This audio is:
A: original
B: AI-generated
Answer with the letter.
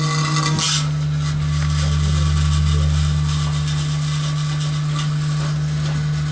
A